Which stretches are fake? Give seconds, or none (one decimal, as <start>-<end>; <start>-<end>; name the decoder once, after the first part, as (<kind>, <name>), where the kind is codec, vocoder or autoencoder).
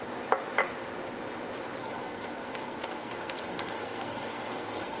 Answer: 1.8-5.0 (codec, SNAC)